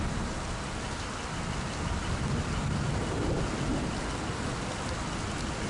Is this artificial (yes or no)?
no